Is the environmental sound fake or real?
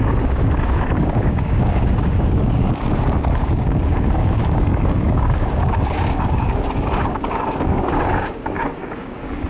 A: fake